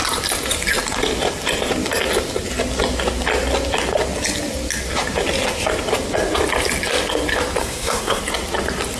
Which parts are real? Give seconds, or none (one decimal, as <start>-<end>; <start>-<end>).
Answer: 0.0-7.6; 8.2-9.0